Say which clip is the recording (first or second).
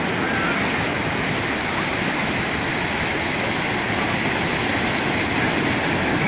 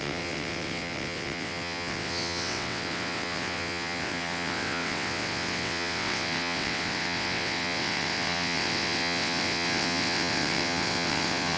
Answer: first